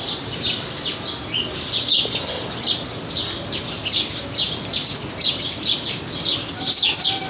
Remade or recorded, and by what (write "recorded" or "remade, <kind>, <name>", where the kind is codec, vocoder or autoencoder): recorded